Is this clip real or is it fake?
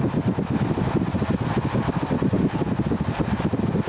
real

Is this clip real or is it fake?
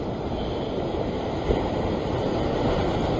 fake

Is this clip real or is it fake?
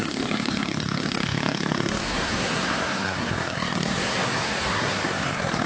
fake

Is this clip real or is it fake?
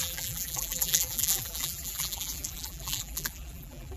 fake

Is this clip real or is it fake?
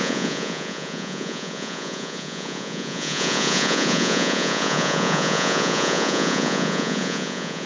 fake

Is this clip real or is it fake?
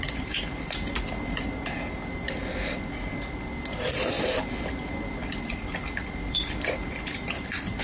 real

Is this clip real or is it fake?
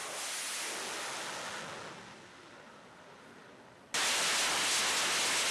real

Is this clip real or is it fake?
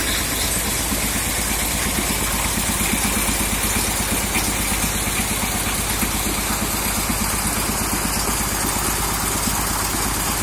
real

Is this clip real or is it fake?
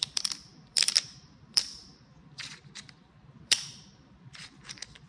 fake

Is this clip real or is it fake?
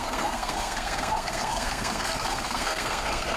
fake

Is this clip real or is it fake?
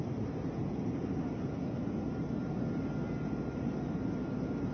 fake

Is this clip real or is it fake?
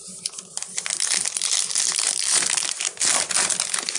real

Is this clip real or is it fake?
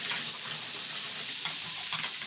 real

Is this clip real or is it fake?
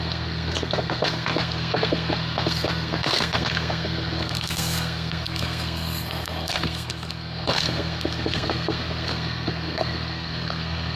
fake